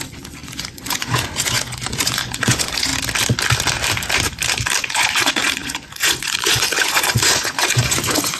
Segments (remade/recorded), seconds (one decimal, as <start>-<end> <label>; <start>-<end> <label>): 0.0-2.9 remade; 2.9-4.8 recorded; 4.8-8.4 remade